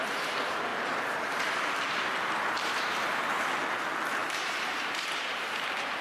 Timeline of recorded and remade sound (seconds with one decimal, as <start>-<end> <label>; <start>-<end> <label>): 0.0-4.2 recorded; 4.2-5.4 remade; 5.4-6.0 recorded